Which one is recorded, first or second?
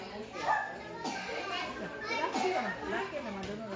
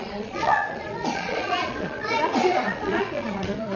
first